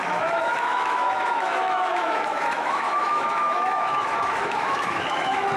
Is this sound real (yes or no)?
no